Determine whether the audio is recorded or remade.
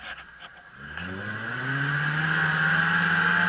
recorded